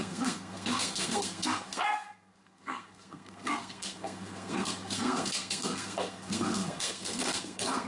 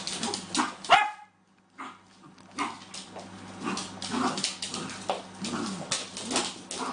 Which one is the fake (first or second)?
first